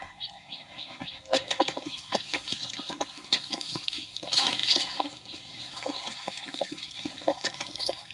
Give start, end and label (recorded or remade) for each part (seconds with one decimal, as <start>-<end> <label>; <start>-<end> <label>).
0.0-8.1 remade